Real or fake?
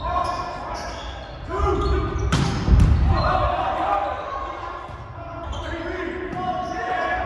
real